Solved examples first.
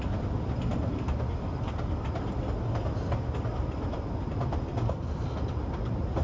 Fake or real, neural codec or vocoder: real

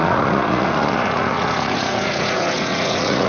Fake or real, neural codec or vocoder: fake, vocoder, Vocos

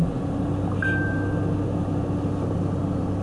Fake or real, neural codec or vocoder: real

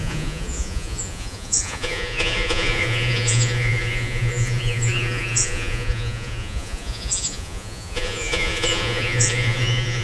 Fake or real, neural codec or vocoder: fake, vocoder, Vocos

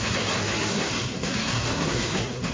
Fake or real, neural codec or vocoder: fake, codec, SNAC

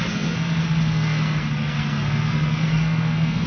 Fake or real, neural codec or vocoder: fake, codec, SNAC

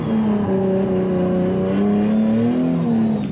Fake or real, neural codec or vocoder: real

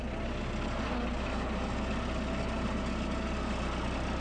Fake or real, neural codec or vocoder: real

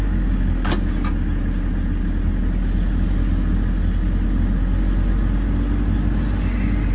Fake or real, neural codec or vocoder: real